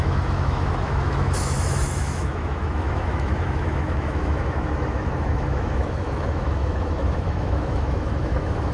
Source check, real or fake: fake